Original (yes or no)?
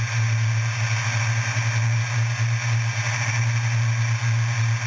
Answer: yes